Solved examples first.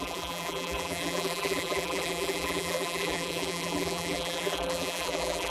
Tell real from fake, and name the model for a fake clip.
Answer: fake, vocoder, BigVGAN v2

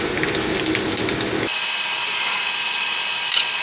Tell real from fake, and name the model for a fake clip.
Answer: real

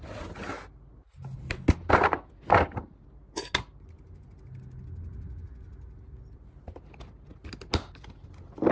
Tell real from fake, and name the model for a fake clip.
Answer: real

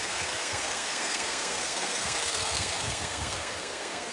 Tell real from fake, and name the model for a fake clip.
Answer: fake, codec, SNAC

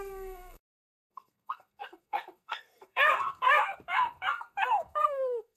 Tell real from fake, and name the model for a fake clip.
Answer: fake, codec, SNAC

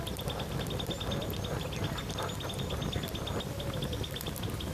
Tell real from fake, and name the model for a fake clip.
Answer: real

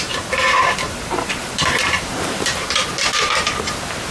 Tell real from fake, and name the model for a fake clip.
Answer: fake, vocoder, BigVGAN v2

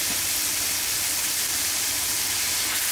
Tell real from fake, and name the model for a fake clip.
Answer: fake, vocoder, BigVGAN v2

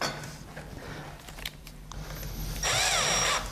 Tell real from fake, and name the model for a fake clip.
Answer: real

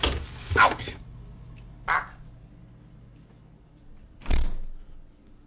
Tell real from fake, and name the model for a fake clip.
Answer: real